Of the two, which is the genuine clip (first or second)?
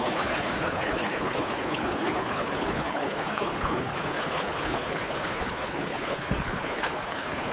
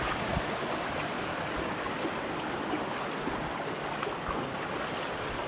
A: second